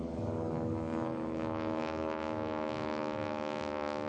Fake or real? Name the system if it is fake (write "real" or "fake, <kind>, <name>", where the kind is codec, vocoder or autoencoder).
fake, codec, DAC